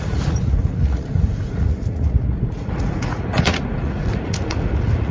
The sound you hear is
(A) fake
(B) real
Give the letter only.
A